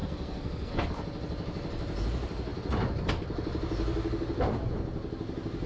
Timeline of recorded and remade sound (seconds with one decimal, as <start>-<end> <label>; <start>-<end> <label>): 0.0-0.7 remade; 0.7-5.7 recorded